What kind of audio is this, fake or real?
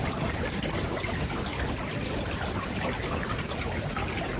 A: real